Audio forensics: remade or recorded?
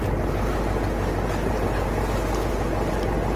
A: recorded